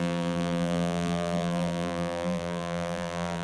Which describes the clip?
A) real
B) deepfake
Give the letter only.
B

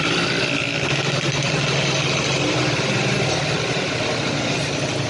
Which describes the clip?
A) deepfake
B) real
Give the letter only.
B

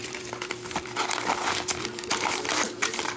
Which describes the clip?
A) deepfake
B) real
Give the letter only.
A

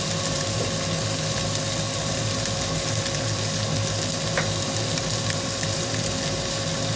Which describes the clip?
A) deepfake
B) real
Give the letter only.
B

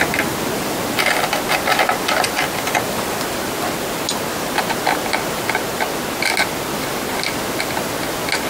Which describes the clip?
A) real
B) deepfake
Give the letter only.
A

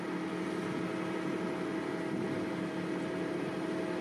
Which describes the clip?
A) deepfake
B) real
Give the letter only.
B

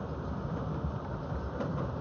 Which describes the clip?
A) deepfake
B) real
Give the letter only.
A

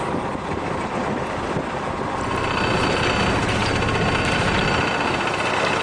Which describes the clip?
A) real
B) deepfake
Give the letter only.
B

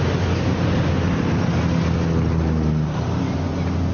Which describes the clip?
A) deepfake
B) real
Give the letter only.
B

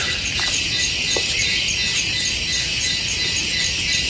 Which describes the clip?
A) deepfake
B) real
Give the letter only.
B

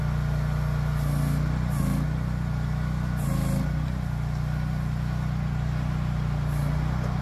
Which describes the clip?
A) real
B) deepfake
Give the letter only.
A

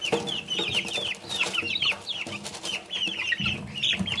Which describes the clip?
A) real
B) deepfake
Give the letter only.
B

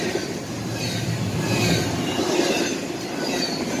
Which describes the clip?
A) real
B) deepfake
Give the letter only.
A